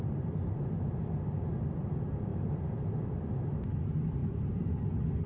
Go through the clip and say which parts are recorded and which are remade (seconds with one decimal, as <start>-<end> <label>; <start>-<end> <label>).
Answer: 0.0-2.3 recorded; 2.3-2.8 remade; 2.8-4.2 recorded; 4.2-4.7 remade; 4.7-5.3 recorded